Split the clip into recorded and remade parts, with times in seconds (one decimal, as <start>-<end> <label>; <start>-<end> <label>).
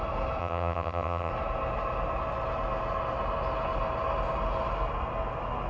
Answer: 0.0-0.4 recorded; 0.4-1.3 remade; 1.3-5.7 recorded